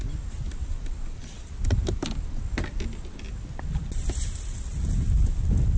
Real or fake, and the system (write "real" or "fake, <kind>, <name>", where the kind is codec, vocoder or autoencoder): real